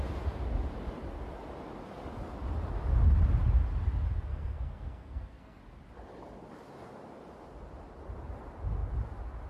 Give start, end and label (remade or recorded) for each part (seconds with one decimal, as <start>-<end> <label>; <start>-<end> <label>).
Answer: 0.0-4.3 recorded; 4.3-5.6 remade; 5.6-9.5 recorded